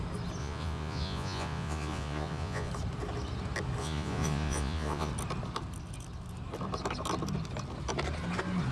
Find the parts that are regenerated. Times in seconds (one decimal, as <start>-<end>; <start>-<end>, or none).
0.4-2.7; 3.8-5.1

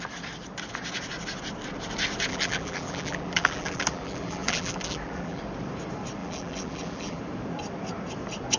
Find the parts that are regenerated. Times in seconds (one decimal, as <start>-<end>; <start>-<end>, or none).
2.3-5.4; 6.2-7.2

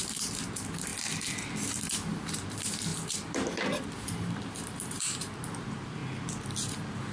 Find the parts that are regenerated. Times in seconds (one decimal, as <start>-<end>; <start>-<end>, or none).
0.0-0.9; 2.3-6.0

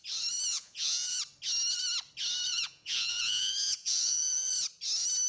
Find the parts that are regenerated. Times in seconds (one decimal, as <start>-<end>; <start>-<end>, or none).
0.5-1.2; 2.5-4.5

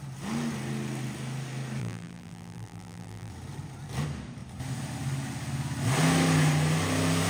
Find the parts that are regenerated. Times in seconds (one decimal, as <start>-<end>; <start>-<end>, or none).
1.8-3.3